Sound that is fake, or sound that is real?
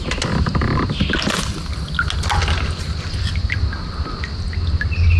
real